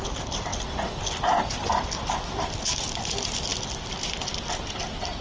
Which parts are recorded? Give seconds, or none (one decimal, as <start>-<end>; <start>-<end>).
0.0-5.2